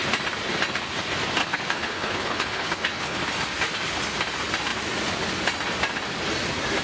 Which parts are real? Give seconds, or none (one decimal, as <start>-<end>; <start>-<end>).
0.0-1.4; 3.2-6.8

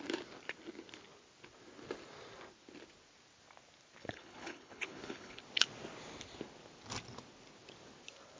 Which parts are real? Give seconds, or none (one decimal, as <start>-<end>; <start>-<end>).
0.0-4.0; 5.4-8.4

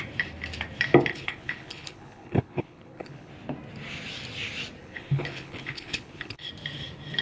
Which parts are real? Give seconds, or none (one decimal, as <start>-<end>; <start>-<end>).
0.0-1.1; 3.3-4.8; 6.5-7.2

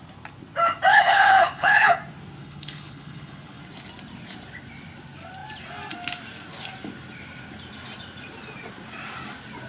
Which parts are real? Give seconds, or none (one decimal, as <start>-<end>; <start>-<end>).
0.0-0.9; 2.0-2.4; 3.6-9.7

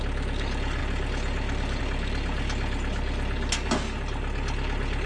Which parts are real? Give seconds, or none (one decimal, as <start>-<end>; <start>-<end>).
0.0-5.1

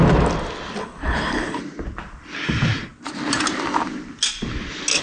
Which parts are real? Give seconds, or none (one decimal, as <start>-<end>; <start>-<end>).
0.0-0.8; 1.6-5.0